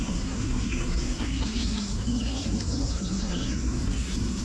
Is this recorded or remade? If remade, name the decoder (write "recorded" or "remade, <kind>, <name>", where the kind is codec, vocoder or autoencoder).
remade, codec, SNAC